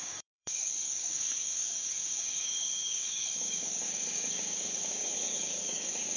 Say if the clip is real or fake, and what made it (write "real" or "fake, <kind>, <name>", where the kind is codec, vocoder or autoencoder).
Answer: fake, codec, DAC